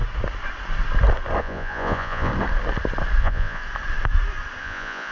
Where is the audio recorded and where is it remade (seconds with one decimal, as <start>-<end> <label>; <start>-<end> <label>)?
0.0-1.4 recorded; 1.4-2.3 remade; 2.3-3.2 recorded; 3.2-3.6 remade; 3.6-4.6 recorded; 4.6-5.1 remade